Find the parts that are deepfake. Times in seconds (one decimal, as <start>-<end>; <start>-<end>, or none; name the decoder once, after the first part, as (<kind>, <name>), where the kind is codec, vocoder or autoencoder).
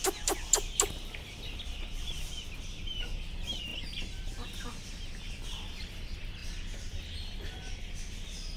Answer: none